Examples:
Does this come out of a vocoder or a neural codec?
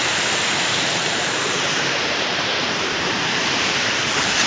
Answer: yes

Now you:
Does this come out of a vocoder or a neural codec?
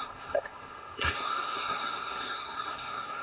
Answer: yes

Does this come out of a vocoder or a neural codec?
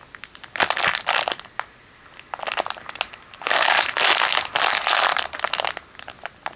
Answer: no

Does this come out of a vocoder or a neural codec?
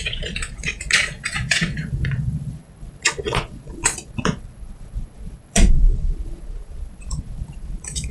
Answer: yes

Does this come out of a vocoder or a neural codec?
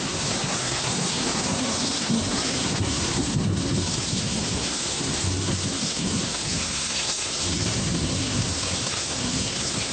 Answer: yes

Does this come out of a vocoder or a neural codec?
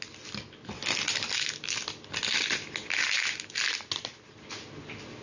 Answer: no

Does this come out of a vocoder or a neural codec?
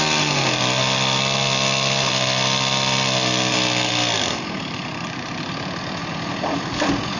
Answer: no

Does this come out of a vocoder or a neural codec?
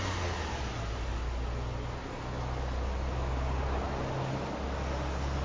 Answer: no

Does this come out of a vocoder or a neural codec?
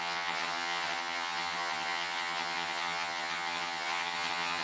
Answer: yes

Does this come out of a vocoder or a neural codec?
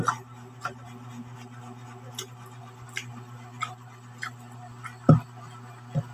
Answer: no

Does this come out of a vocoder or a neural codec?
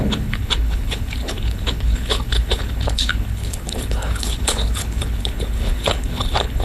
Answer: yes